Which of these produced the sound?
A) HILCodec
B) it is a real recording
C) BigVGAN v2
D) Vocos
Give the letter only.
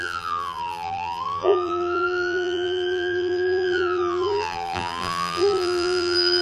C